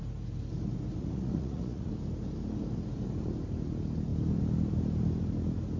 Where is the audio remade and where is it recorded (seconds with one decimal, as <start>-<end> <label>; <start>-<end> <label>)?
0.0-1.0 recorded; 1.0-1.9 remade; 1.9-5.8 recorded